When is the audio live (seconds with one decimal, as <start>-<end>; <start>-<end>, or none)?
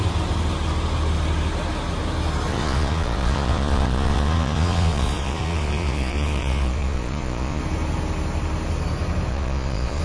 0.0-2.5; 7.6-9.3